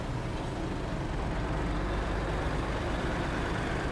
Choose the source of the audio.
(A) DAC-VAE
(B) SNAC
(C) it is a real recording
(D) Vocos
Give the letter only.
C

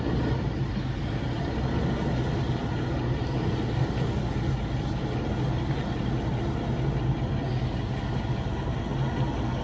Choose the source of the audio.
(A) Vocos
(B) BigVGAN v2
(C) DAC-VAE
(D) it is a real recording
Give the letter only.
D